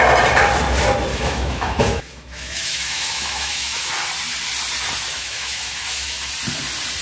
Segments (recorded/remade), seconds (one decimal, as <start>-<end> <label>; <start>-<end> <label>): 0.0-1.1 recorded; 1.1-3.9 remade; 3.9-5.1 recorded; 5.1-6.3 remade; 6.3-7.0 recorded